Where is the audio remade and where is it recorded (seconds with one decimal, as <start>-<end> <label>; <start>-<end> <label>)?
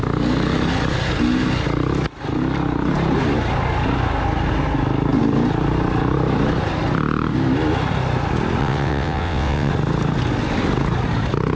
0.0-8.6 recorded; 8.6-9.7 remade; 9.7-11.6 recorded